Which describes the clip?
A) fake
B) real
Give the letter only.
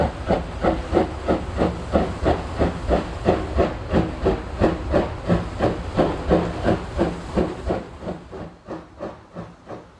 B